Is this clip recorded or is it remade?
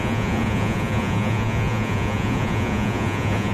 remade